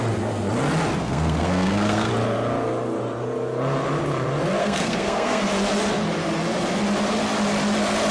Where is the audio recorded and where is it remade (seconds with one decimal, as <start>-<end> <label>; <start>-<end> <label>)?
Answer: 0.0-1.0 recorded; 1.0-2.1 remade; 2.1-4.6 recorded; 4.6-5.4 remade; 5.4-8.1 recorded